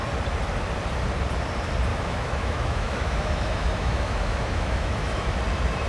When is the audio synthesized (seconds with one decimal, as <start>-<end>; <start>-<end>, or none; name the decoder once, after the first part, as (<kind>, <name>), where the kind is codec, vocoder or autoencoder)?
1.9-5.4 (autoencoder, DAC-VAE)